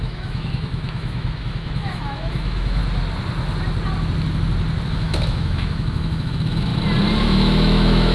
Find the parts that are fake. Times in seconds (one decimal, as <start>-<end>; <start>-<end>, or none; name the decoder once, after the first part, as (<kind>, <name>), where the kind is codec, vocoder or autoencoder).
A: 0.0-2.8 (autoencoder, DAC-VAE); 4.9-6.7; 7.2-8.1